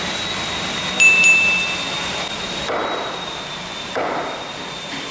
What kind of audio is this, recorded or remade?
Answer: recorded